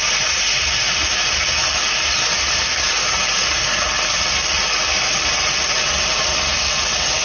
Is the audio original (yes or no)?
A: yes